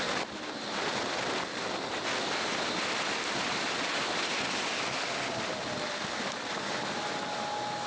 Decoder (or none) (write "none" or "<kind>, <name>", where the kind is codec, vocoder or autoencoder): none